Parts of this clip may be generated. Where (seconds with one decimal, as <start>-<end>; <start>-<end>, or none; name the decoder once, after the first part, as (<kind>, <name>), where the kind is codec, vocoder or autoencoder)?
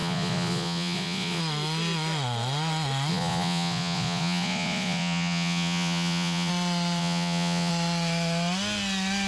0.0-1.4 (vocoder, Vocos); 3.1-6.5; 7.0-7.7